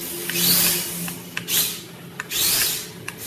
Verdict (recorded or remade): recorded